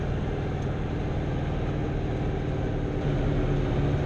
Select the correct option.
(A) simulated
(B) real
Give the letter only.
B